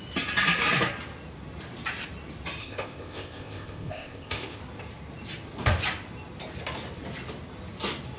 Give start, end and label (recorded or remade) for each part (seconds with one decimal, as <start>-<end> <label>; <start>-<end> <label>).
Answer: 0.0-2.6 recorded; 2.6-4.6 remade; 4.6-8.2 recorded